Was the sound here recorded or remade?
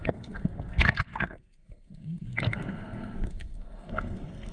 remade